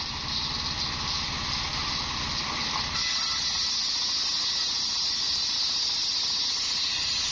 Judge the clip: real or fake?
real